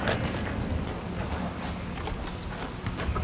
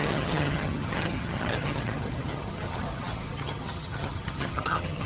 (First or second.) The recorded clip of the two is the first